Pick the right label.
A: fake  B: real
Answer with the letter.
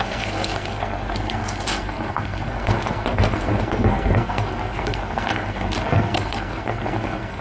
A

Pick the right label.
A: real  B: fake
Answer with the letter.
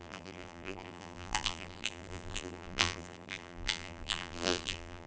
B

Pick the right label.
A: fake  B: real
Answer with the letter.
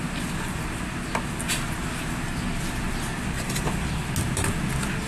B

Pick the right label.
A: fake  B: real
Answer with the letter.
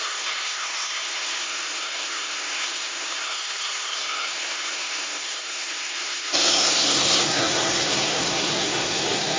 A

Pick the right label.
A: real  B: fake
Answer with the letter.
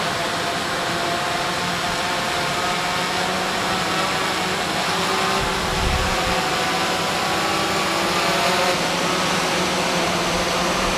A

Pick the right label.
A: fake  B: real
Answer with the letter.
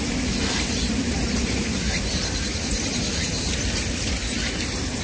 B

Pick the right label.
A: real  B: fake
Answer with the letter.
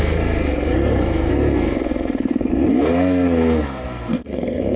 B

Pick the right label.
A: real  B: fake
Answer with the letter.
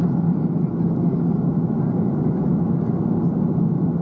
A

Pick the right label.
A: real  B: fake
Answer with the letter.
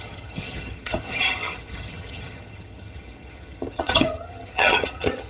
B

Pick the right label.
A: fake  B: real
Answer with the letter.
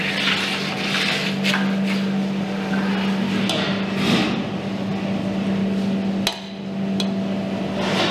B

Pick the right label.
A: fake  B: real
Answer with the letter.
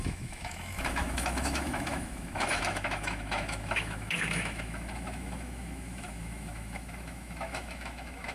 A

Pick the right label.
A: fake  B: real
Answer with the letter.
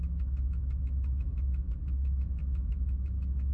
A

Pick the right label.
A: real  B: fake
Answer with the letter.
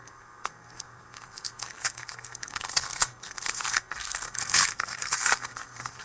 B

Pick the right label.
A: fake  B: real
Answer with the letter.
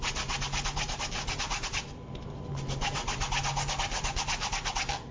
B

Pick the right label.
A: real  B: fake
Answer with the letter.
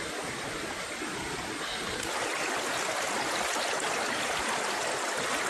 A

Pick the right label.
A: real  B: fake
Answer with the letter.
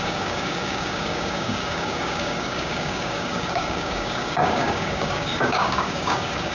B